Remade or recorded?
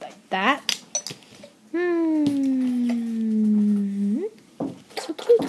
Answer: recorded